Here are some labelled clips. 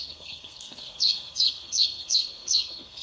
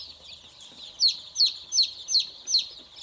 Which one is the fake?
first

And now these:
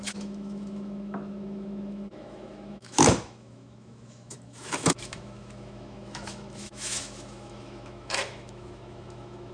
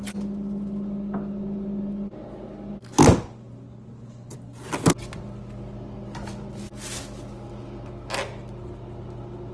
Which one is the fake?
first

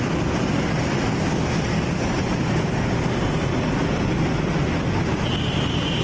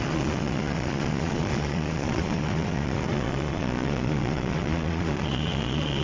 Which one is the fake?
second